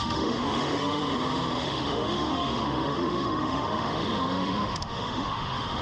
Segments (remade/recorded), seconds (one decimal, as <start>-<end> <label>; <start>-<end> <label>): 0.0-1.0 remade; 1.0-1.6 recorded; 1.6-5.8 remade